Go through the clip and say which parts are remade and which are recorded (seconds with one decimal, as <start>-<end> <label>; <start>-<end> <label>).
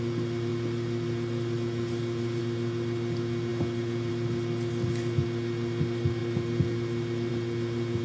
0.0-8.0 recorded